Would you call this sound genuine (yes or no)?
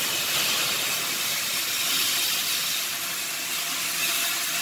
yes